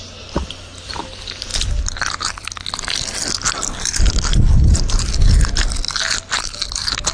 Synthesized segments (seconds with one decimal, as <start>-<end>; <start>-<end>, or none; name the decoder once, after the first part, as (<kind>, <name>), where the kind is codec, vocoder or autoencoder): none